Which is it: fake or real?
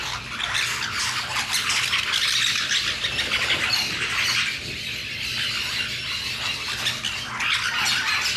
real